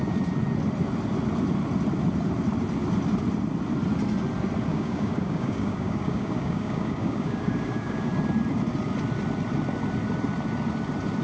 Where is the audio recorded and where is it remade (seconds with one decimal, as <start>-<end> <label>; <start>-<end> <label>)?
0.0-4.7 recorded; 4.7-8.1 remade; 8.1-11.2 recorded

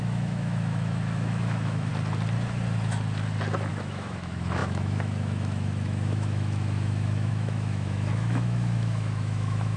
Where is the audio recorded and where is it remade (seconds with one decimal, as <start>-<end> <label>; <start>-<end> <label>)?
0.0-1.9 remade; 1.9-3.7 recorded; 3.7-9.8 remade

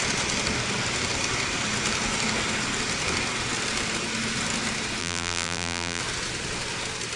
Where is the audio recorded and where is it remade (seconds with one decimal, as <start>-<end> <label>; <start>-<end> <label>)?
0.0-5.0 recorded; 5.0-6.0 remade; 6.0-7.2 recorded

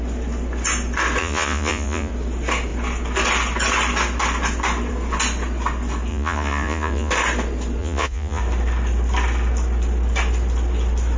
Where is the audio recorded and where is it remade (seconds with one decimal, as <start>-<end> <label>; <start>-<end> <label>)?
0.0-1.2 recorded; 1.2-2.1 remade; 2.1-6.1 recorded; 6.1-7.1 remade; 7.1-7.8 recorded; 7.8-8.4 remade; 8.4-11.2 recorded

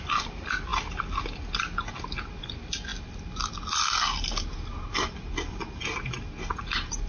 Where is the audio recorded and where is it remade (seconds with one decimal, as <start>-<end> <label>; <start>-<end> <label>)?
0.0-7.1 recorded

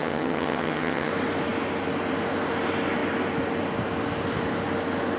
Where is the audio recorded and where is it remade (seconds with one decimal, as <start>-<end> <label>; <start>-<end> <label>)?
0.0-1.1 remade; 1.1-5.2 recorded

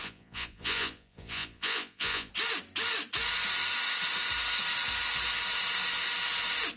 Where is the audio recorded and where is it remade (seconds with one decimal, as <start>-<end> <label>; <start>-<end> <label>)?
0.0-2.3 remade; 2.3-6.8 recorded